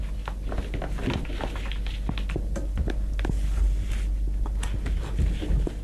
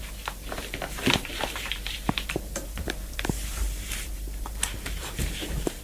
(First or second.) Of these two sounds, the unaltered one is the first